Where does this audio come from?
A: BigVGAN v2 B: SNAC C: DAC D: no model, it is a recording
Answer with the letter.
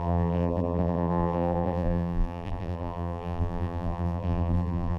A